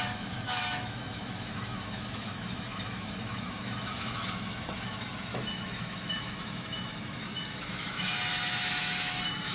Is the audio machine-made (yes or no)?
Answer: yes